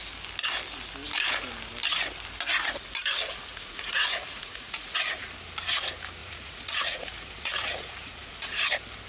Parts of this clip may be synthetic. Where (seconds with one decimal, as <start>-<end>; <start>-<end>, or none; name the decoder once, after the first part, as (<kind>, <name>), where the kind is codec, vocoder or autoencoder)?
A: 3.5-5.3 (vocoder, Vocos); 6.2-8.7